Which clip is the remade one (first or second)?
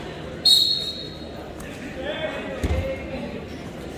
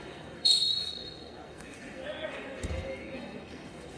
second